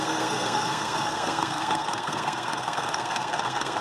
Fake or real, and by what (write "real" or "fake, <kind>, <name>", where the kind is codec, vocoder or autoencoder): fake, codec, SNAC